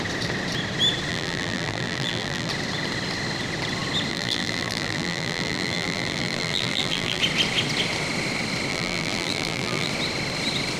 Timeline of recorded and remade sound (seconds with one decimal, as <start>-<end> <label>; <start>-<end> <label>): 0.0-1.1 recorded; 1.1-2.5 remade; 2.5-4.1 recorded; 4.1-7.2 remade; 7.2-8.7 recorded; 8.7-9.9 remade; 9.9-10.8 recorded